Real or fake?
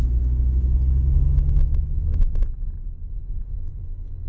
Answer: real